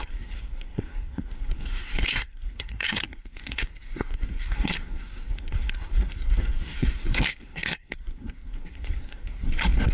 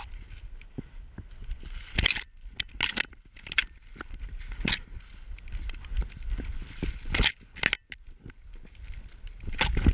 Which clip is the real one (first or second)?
second